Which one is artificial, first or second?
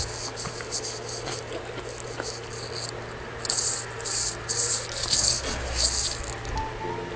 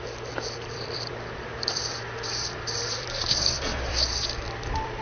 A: second